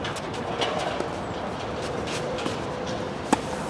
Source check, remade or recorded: recorded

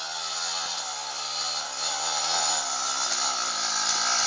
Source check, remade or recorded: recorded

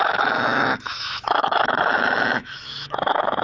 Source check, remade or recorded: remade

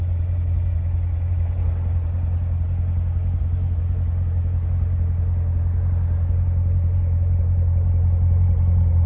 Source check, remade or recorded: recorded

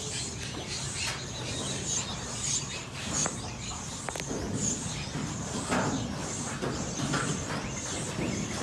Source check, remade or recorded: recorded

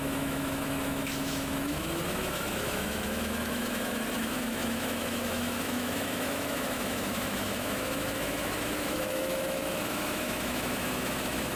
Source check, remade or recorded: remade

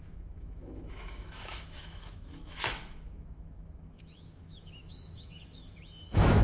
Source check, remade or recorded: remade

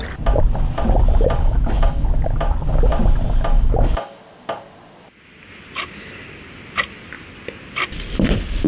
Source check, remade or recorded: recorded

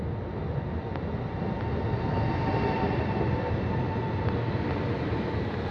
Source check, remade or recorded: recorded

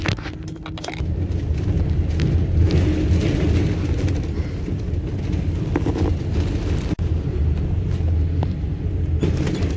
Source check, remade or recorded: recorded